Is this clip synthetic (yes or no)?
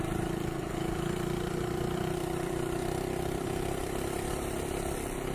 yes